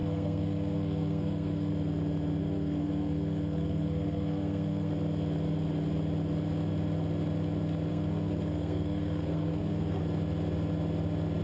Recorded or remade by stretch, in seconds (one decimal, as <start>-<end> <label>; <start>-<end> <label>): 0.0-1.7 remade; 1.7-2.4 recorded; 2.4-4.9 remade; 4.9-7.9 recorded; 7.9-10.0 remade; 10.0-11.4 recorded